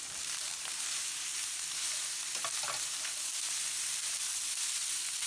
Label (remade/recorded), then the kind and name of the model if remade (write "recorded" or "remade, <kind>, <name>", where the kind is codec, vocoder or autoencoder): remade, vocoder, BigVGAN v2